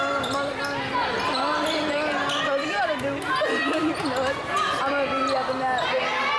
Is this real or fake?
real